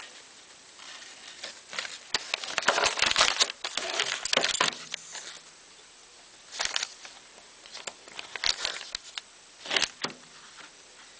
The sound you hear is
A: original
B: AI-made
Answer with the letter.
A